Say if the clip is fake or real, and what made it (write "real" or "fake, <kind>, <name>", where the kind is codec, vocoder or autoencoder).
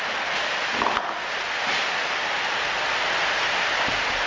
real